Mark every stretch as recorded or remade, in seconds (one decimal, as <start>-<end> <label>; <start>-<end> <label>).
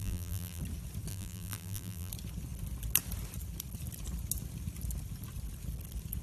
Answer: 0.0-0.6 remade; 0.6-1.1 recorded; 1.1-2.1 remade; 2.1-6.2 recorded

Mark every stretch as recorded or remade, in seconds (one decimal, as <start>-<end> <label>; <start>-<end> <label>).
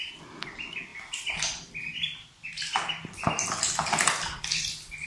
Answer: 0.0-5.1 recorded